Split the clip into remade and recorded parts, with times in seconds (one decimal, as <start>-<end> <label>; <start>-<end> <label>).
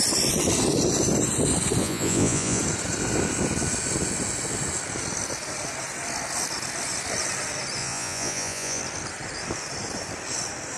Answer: 0.0-1.8 recorded; 1.8-2.6 remade; 2.6-7.8 recorded; 7.8-8.8 remade; 8.8-10.8 recorded